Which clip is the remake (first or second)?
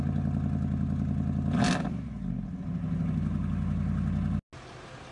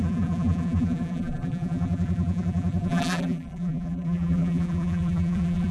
second